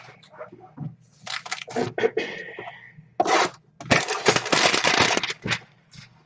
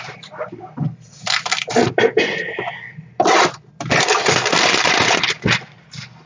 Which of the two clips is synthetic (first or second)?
second